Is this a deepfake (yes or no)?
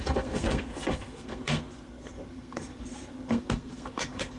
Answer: yes